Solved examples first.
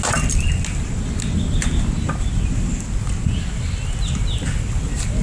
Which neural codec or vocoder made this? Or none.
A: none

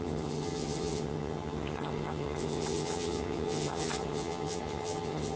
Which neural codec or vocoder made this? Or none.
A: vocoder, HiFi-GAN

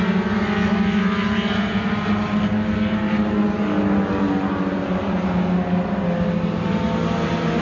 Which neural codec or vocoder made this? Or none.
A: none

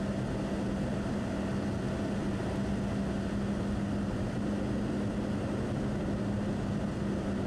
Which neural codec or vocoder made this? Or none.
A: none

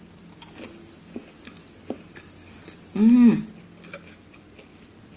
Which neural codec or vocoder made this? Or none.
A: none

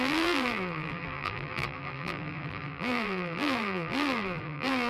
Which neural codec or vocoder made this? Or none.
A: vocoder, BigVGAN v2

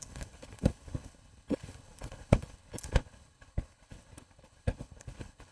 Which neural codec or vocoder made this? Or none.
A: codec, HILCodec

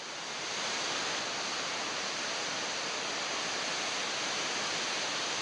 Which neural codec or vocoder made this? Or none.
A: none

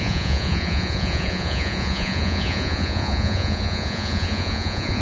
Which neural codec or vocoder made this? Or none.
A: vocoder, Vocos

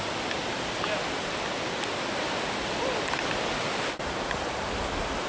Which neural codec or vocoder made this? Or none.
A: none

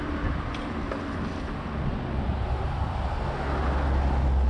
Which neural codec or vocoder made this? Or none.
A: none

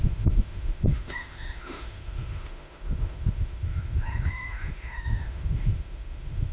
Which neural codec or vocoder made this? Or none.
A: autoencoder, DAC-VAE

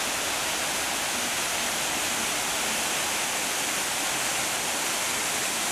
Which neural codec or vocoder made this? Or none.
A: none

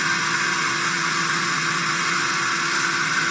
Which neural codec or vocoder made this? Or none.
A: none